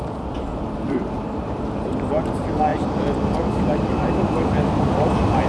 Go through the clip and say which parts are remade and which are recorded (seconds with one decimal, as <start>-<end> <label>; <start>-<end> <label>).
0.0-0.5 recorded; 0.5-2.1 remade; 2.1-5.5 recorded